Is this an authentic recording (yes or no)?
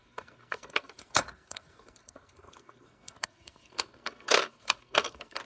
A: no